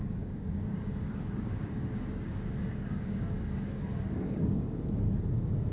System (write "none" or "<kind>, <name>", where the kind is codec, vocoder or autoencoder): codec, DAC